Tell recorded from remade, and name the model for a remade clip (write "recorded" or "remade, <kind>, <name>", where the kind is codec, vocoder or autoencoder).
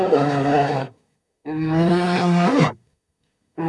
remade, codec, SNAC